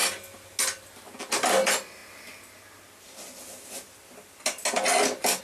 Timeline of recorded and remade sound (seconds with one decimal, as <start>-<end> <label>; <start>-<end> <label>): 0.0-5.4 recorded

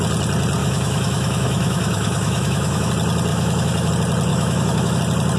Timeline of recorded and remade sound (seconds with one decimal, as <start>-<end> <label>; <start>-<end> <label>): 0.0-0.6 recorded; 0.6-2.9 remade; 2.9-3.3 recorded; 3.3-3.9 remade; 3.9-4.3 recorded; 4.3-5.0 remade; 5.0-5.4 recorded

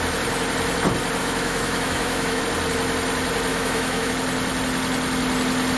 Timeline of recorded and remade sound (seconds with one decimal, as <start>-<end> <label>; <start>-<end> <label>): 0.0-1.2 recorded; 1.2-2.4 remade; 2.4-3.5 recorded; 3.5-4.1 remade; 4.1-5.8 recorded

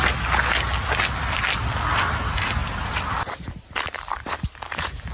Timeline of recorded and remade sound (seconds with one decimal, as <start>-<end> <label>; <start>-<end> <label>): 0.0-2.6 recorded; 2.6-5.1 remade

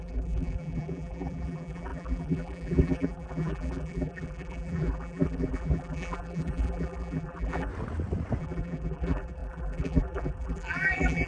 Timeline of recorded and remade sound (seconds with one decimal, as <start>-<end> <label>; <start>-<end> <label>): 0.0-7.7 remade; 7.7-8.4 recorded; 8.4-11.3 remade

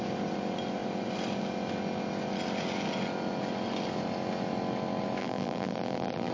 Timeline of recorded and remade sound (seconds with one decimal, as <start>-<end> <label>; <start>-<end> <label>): 0.0-5.2 recorded; 5.2-6.3 remade